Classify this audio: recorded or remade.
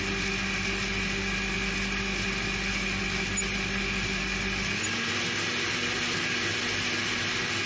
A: recorded